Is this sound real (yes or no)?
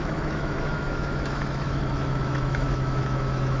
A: no